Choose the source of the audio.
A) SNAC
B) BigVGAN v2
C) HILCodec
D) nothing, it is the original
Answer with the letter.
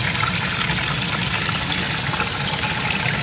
D